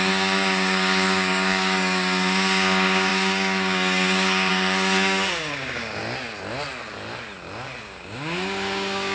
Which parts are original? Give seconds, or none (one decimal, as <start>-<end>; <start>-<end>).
6.0-7.8

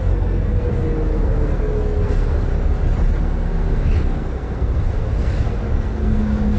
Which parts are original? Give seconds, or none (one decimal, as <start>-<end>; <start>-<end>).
2.5-3.2

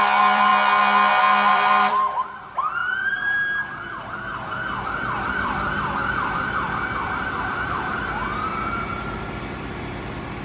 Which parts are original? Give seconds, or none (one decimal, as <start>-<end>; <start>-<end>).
0.5-1.5; 8.2-10.4

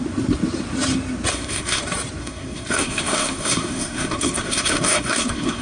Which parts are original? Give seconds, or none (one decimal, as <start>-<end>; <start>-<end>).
0.0-1.3; 1.8-2.2

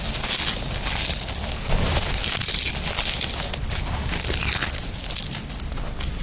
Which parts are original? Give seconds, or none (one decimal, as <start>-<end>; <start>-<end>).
0.0-6.2

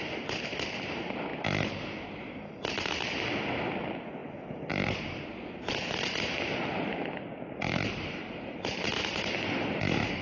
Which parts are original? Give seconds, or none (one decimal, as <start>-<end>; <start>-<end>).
0.0-10.2

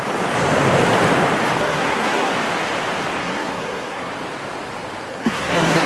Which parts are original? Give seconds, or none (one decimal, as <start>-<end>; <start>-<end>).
0.0-1.6; 2.3-3.2; 4.1-5.1